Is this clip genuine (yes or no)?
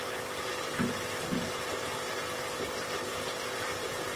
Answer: yes